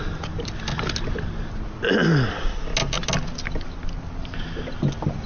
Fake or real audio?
real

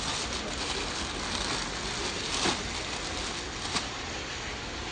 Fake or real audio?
real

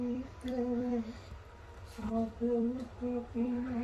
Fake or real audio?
fake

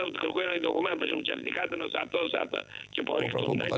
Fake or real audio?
fake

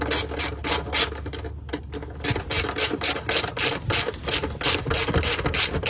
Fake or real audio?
real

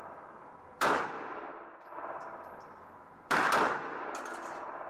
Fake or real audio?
fake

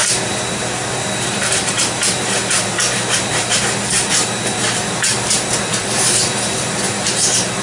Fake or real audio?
fake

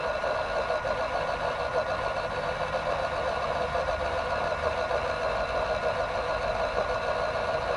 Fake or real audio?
real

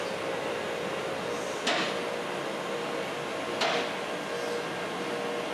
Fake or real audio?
real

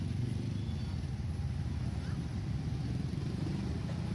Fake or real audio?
fake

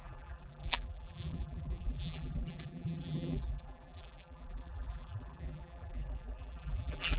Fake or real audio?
fake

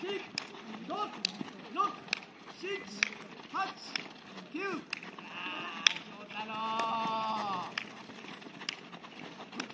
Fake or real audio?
real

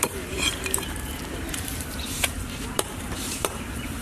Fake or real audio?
fake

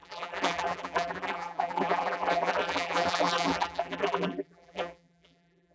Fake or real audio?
fake